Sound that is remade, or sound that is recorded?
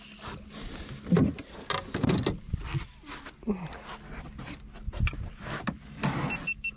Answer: recorded